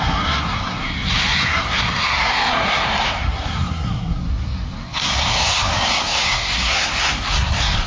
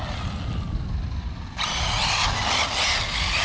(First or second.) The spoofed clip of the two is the first